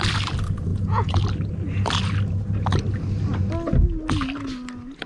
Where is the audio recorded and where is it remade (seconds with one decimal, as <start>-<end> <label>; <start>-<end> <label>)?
0.0-0.7 recorded; 0.7-1.2 remade; 1.2-5.1 recorded